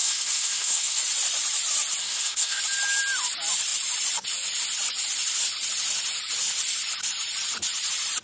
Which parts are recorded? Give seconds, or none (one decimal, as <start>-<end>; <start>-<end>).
1.0-2.0; 2.6-8.2